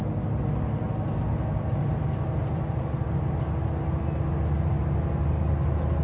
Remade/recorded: recorded